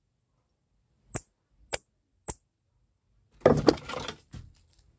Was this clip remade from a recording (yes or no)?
no